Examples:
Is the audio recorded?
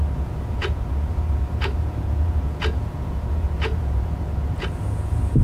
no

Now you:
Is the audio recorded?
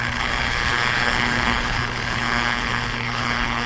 no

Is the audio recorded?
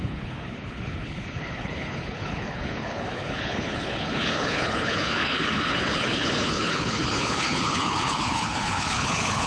no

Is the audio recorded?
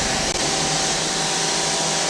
yes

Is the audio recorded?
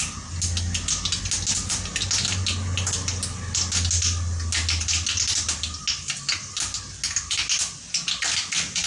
yes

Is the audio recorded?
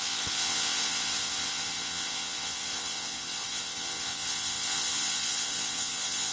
no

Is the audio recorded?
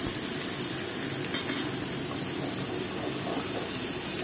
yes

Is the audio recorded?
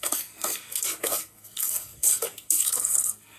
no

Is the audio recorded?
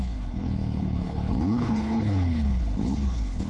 no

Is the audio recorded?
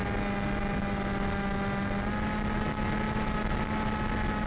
yes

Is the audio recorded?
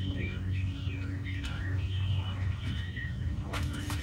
no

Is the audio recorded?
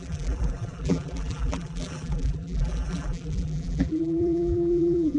no